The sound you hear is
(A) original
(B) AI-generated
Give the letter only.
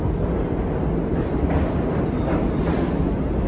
A